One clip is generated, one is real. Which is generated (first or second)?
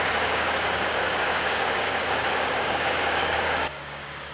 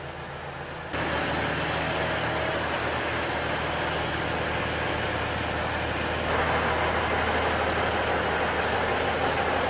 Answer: first